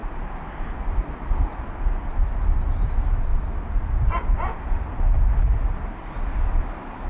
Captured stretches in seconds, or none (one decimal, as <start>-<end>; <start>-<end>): 1.0-7.1